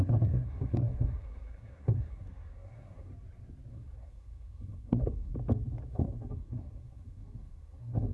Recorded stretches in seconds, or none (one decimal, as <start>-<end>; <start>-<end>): 3.1-3.7; 5.3-5.9